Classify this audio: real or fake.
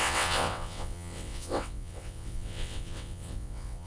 fake